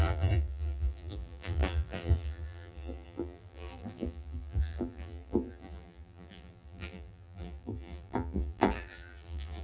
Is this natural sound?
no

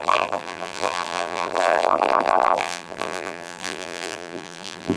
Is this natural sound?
no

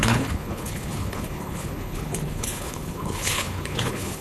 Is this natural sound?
no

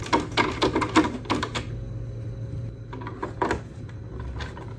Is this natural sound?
yes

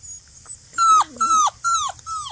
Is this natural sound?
yes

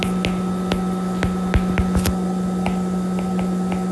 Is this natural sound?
yes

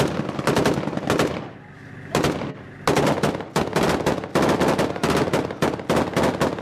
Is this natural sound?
yes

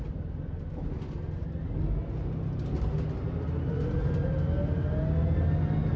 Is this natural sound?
yes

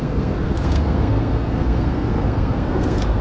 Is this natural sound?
no